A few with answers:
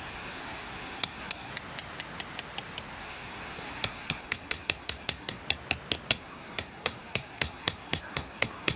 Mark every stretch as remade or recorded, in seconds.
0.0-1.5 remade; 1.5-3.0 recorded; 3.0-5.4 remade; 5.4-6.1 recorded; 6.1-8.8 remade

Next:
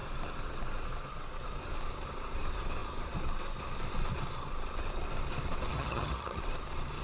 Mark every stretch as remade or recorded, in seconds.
0.0-5.7 recorded; 5.7-6.4 remade; 6.4-7.0 recorded

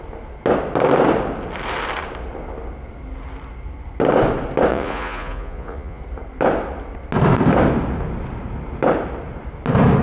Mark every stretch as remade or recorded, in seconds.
0.0-4.7 recorded; 4.7-6.0 remade; 6.0-10.0 recorded

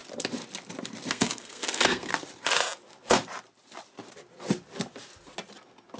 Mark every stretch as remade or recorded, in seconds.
0.0-1.1 recorded; 1.1-2.1 remade; 2.1-6.0 recorded

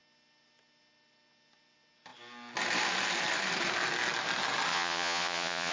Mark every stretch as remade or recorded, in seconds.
0.0-4.7 recorded; 4.7-5.7 remade